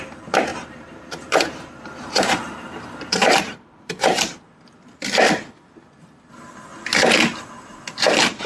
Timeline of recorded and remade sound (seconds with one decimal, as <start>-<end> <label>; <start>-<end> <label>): 0.0-0.5 recorded; 0.5-4.4 remade; 4.4-8.5 recorded